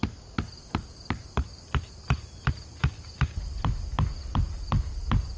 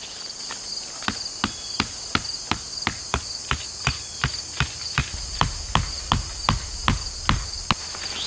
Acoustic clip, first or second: second